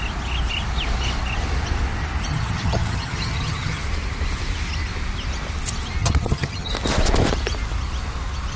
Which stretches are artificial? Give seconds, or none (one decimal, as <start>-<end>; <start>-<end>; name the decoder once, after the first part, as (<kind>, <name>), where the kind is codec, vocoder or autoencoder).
2.3-3.8 (vocoder, HiFi-GAN); 6.0-6.7

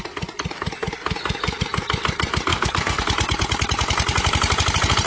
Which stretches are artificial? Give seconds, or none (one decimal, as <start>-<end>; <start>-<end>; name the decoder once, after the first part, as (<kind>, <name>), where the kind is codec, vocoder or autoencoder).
2.5-3.0 (codec, SNAC)

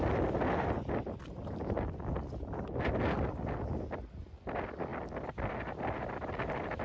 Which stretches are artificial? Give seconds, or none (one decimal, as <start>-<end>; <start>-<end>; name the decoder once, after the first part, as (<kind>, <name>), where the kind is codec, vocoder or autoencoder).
none

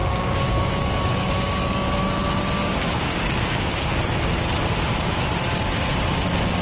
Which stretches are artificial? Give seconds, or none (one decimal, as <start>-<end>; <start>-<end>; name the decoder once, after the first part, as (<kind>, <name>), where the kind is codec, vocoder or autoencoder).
0.0-4.0 (codec, DAC)

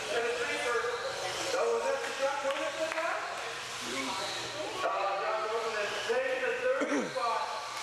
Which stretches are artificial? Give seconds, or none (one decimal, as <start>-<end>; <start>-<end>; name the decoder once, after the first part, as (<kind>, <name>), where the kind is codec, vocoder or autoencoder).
0.0-1.7 (vocoder, BigVGAN v2); 2.6-5.7; 6.9-7.8